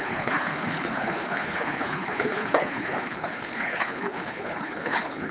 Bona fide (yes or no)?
no